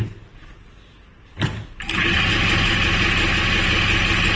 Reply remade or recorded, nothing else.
recorded